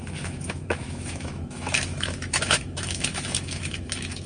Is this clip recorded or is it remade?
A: remade